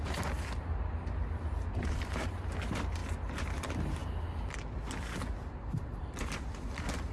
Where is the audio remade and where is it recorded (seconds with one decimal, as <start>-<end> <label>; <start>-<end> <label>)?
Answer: 0.0-0.7 remade; 0.7-1.7 recorded; 1.7-4.0 remade; 4.0-5.6 recorded; 5.6-7.1 remade